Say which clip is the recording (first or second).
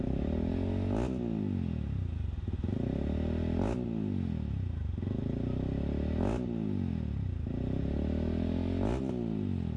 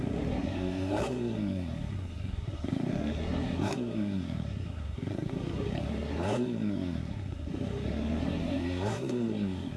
first